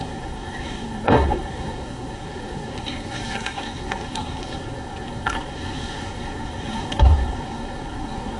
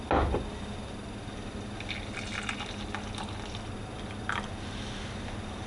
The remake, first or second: first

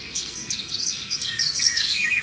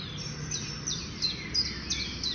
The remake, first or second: first